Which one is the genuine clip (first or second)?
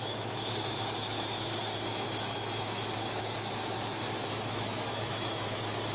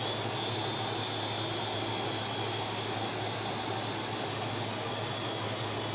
second